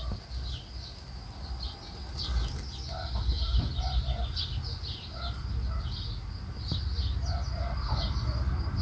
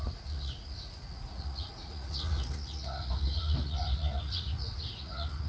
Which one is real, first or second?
first